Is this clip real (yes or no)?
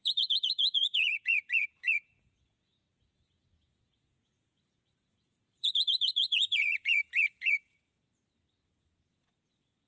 no